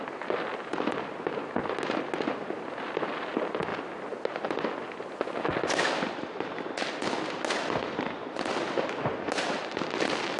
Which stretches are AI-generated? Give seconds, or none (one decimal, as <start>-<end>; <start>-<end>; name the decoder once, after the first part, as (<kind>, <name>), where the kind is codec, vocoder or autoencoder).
none